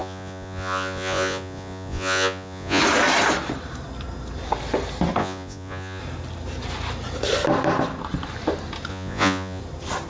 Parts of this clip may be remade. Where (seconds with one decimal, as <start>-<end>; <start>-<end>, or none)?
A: 0.0-2.8; 5.2-6.0; 8.9-9.6